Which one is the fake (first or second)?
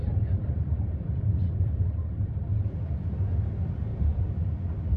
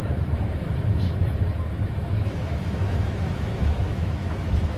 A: second